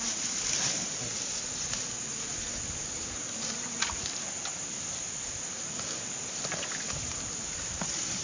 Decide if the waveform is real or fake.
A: real